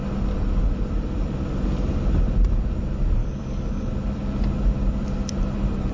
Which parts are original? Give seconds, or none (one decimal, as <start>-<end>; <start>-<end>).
0.0-3.2; 3.9-5.9